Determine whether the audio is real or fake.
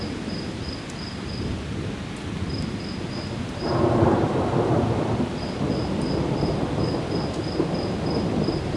real